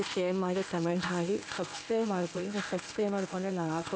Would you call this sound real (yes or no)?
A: no